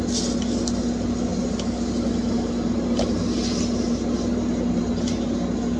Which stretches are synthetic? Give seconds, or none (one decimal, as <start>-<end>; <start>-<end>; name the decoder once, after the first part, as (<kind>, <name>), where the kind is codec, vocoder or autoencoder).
none